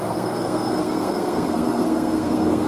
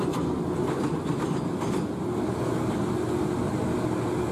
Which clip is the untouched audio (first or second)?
second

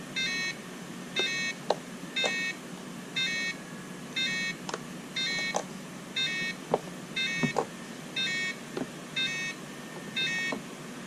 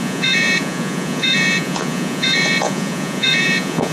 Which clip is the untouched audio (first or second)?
first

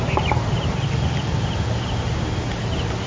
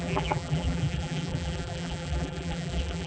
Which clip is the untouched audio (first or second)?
first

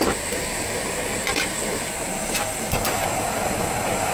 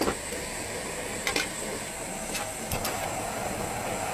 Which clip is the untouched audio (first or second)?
second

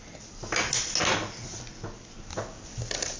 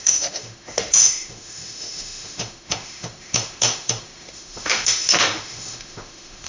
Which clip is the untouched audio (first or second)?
first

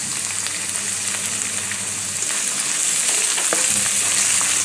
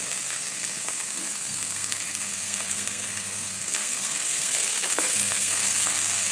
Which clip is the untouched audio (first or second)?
first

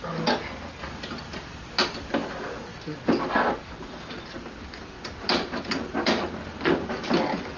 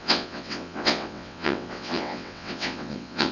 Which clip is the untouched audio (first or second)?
first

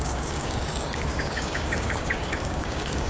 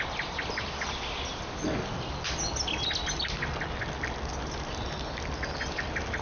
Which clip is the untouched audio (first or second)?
second